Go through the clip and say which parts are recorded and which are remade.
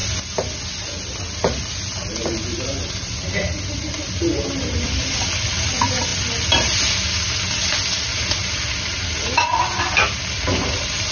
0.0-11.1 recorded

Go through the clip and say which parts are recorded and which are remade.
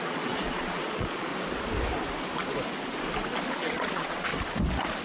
0.0-1.3 remade; 1.3-3.5 recorded; 3.5-4.3 remade; 4.3-5.0 recorded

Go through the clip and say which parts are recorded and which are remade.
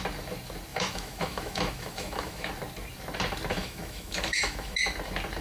0.0-0.7 recorded; 0.7-2.5 remade; 2.5-3.5 recorded; 3.5-4.8 remade; 4.8-5.4 recorded